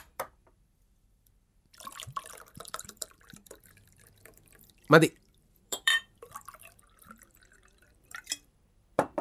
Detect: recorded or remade remade